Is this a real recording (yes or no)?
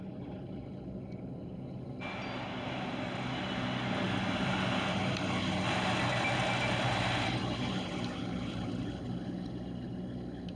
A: yes